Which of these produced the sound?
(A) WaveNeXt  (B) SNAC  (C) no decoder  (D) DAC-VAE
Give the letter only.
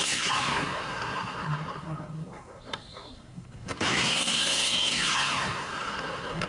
B